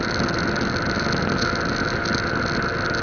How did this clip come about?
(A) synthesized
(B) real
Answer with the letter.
B